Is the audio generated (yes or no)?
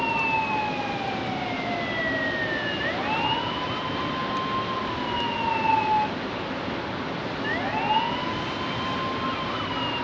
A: no